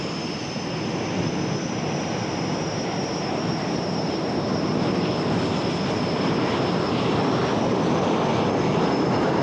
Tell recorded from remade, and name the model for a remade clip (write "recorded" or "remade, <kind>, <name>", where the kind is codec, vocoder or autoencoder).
recorded